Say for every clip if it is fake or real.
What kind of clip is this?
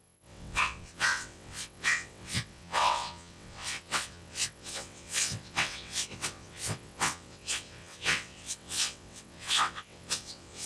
fake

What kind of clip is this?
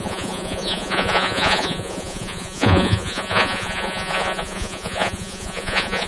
fake